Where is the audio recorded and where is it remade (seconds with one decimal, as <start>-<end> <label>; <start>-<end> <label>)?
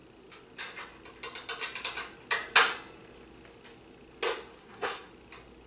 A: 0.0-4.6 recorded; 4.6-5.1 remade; 5.1-5.7 recorded